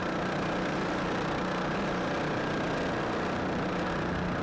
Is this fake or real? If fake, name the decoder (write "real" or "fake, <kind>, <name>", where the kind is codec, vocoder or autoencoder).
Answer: real